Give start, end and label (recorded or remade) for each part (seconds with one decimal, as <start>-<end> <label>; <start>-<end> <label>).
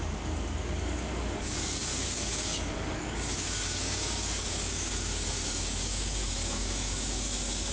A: 0.0-7.7 remade